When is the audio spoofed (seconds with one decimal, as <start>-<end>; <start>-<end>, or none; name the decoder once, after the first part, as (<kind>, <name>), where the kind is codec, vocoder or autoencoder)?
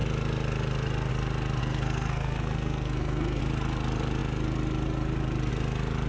1.6-3.4 (codec, SNAC)